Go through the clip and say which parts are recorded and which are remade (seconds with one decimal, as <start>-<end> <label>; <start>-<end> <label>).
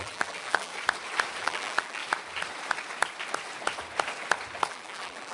0.0-0.7 remade; 0.7-1.4 recorded; 1.4-2.0 remade; 2.0-4.7 recorded; 4.7-5.3 remade